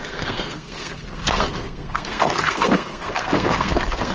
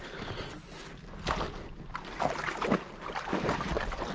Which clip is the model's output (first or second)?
first